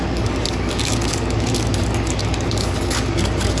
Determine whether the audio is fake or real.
fake